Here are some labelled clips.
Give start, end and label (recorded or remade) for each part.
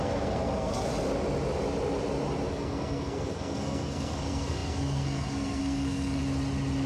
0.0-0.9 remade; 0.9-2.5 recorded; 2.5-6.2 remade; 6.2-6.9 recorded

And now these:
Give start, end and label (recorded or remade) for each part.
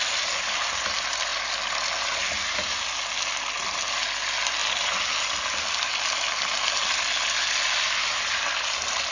0.0-9.1 recorded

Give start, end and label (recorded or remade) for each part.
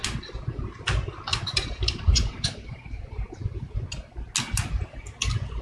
0.0-1.3 recorded; 1.3-3.7 remade; 3.7-5.6 recorded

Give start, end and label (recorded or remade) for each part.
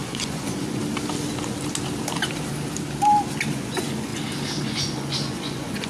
0.0-0.8 remade; 0.8-3.5 recorded; 3.5-4.1 remade; 4.1-4.6 recorded; 4.6-5.9 remade